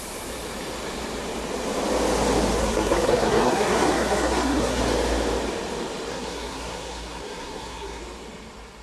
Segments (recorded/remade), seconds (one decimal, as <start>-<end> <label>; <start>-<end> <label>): 0.0-2.6 recorded; 2.6-4.8 remade; 4.8-6.1 recorded; 6.1-8.0 remade; 8.0-8.8 recorded